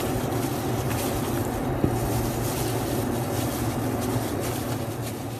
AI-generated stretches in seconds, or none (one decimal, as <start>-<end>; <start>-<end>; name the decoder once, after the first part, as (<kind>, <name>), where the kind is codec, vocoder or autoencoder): none